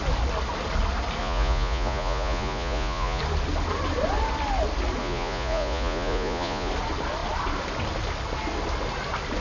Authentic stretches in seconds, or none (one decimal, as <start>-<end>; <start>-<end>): 0.0-1.2; 3.2-5.0; 6.7-9.4